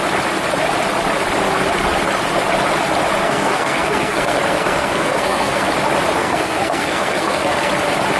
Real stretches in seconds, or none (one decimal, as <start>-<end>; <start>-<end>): 0.0-3.2; 5.7-6.2; 7.7-8.2